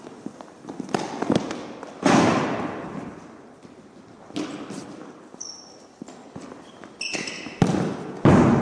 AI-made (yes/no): no